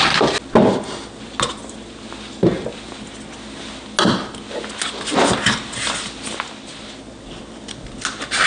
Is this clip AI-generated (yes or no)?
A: no